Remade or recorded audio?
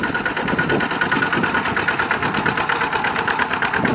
recorded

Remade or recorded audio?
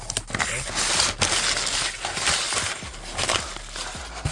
recorded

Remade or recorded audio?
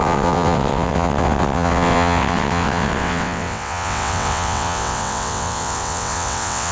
remade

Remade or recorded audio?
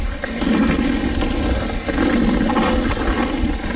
recorded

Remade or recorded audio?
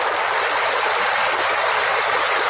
recorded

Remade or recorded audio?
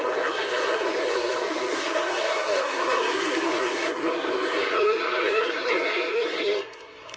remade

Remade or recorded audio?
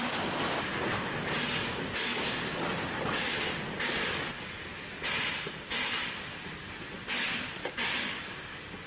remade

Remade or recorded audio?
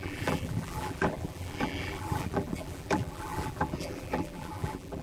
remade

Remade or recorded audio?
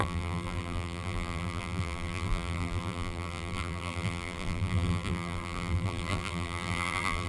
remade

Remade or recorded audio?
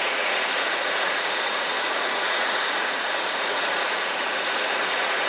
remade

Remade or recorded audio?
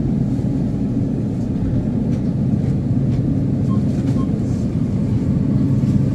recorded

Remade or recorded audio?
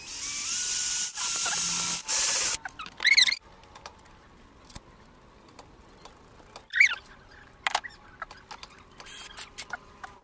recorded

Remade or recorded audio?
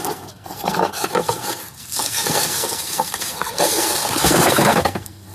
remade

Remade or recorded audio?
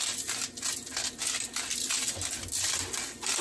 recorded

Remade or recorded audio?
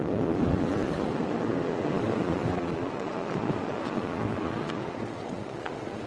remade